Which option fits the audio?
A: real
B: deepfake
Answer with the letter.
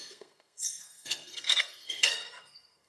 B